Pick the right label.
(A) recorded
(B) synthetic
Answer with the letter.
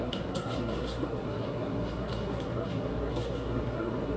B